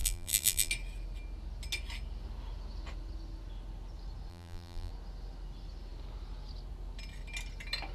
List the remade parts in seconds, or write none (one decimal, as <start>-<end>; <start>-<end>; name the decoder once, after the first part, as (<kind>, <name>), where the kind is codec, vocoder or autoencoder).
0.0-0.7 (vocoder, BigVGAN v2); 4.3-4.9